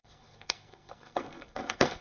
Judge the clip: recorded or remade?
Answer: remade